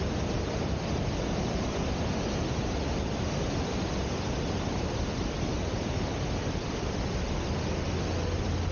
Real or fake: real